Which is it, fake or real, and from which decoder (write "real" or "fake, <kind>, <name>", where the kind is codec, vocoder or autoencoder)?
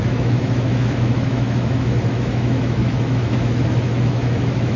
fake, autoencoder, DAC-VAE